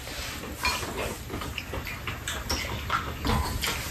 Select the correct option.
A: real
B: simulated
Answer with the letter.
A